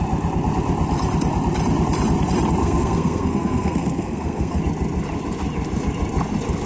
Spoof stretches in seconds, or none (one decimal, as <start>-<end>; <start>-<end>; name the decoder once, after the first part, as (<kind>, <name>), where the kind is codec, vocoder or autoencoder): 2.6-4.6 (codec, SNAC)